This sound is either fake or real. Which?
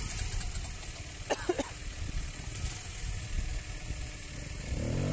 real